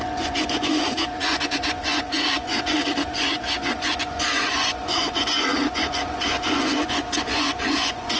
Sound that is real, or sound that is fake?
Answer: fake